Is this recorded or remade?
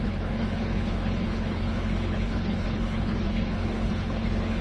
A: remade